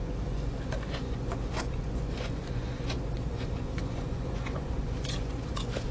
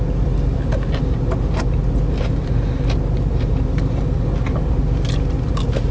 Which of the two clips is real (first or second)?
second